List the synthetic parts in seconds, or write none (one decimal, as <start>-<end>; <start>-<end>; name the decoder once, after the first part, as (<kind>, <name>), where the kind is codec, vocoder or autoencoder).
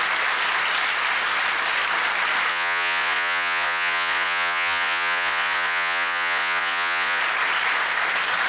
2.5-7.2 (vocoder, Vocos)